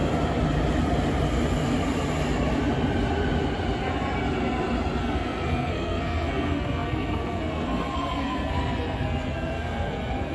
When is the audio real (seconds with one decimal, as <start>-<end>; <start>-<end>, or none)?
0.0-5.0